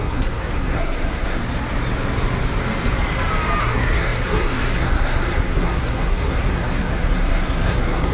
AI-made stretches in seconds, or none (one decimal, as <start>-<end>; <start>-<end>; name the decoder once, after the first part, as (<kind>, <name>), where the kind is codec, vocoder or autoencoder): 0.0-1.4 (codec, SNAC); 3.6-8.1